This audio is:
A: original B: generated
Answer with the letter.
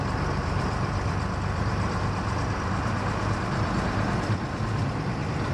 B